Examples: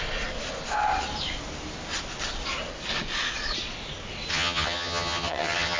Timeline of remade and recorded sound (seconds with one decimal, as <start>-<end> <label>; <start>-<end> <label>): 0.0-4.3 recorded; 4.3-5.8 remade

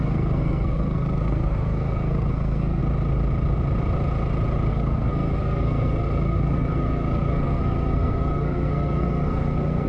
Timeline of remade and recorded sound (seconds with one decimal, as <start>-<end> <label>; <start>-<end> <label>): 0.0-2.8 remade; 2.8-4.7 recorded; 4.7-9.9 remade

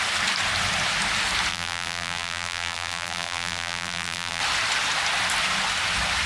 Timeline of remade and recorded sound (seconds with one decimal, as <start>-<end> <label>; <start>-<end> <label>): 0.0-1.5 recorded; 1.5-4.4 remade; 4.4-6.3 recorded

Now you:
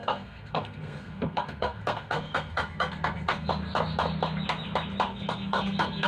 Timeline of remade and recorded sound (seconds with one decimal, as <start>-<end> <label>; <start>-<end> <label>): 0.0-3.5 remade; 3.5-5.1 recorded; 5.1-6.1 remade

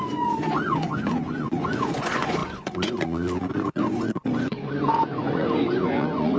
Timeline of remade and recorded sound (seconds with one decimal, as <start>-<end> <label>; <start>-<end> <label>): 0.0-6.4 remade

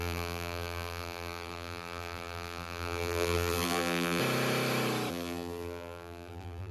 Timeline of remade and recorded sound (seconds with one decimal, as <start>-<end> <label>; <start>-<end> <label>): 0.0-4.2 remade; 4.2-5.1 recorded; 5.1-6.7 remade

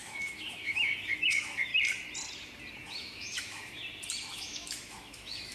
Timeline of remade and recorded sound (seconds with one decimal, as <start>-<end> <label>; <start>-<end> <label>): 0.0-1.7 remade; 1.7-2.9 recorded; 2.9-3.8 remade; 3.8-4.3 recorded; 4.3-5.5 remade

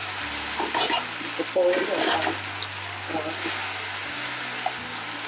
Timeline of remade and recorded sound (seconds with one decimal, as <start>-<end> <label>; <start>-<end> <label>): 0.0-5.3 recorded